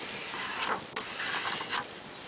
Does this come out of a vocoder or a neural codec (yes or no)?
no